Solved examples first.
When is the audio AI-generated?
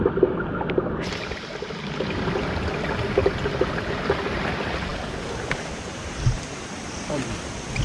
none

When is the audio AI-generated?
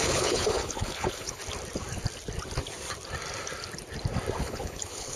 0.0-1.4 (codec, HILCodec); 4.4-5.2